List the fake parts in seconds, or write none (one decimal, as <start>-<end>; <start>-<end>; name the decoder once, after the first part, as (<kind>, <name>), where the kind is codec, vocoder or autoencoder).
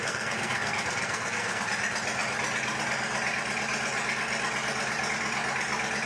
0.0-1.7 (codec, SNAC)